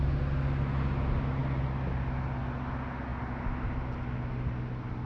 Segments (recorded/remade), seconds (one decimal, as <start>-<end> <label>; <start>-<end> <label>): 0.0-5.1 recorded